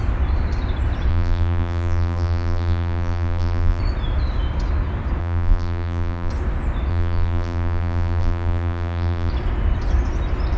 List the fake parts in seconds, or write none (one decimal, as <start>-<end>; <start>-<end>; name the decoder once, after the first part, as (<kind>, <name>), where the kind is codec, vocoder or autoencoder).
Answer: 1.1-3.8 (vocoder, BigVGAN v2); 5.2-6.3; 6.9-9.3